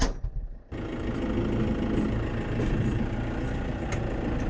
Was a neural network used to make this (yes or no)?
no